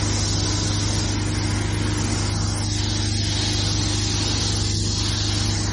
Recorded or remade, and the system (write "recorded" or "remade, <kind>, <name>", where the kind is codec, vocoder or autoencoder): recorded